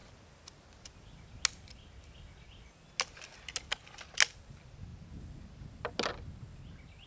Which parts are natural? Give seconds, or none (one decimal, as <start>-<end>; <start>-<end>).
0.0-7.1